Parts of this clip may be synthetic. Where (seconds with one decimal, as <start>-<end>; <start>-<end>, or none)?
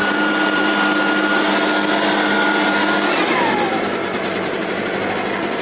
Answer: 0.0-0.6